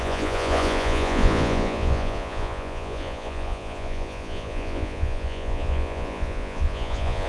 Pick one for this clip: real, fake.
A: fake